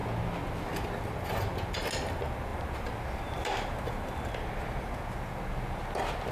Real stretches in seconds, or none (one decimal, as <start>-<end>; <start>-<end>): 0.0-2.5; 4.3-6.3